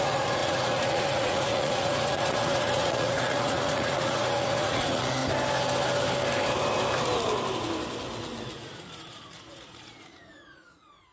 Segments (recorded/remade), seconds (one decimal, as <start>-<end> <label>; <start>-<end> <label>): 0.0-5.2 remade; 5.2-8.5 recorded; 8.5-11.1 remade